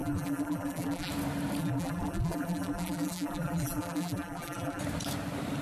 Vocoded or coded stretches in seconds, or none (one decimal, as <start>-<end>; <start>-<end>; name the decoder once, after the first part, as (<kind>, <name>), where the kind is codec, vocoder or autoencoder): 0.0-1.1 (vocoder, BigVGAN v2); 1.6-4.8